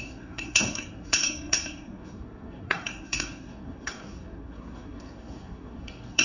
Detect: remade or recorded remade